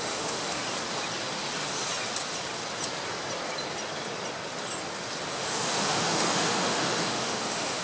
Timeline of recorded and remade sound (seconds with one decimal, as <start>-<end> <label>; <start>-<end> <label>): 0.0-0.6 remade; 0.6-5.3 recorded; 5.3-7.8 remade